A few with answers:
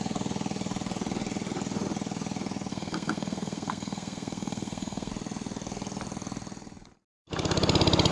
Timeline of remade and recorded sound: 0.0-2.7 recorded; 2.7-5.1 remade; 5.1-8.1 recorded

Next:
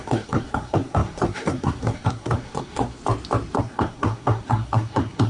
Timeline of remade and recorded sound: 0.0-3.0 remade; 3.0-3.6 recorded; 3.6-5.3 remade

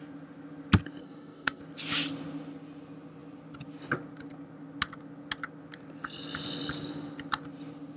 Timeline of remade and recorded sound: 0.0-1.0 recorded; 1.0-1.6 remade; 1.6-8.0 recorded

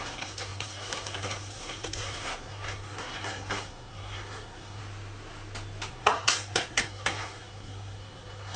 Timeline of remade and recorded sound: 0.0-4.8 remade; 4.8-5.9 recorded; 5.9-8.6 remade

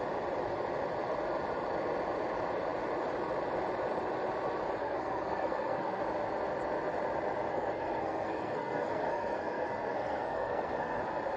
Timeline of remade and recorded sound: 0.0-4.8 recorded; 4.8-6.0 remade; 6.0-7.5 recorded; 7.5-11.0 remade; 11.0-11.4 recorded

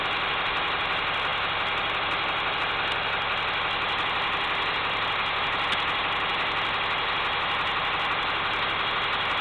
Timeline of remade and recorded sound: 0.0-9.4 recorded

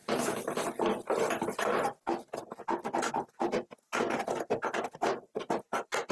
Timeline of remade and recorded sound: 0.0-6.1 recorded

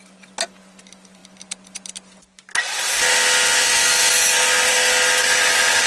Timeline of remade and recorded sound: 0.0-5.9 recorded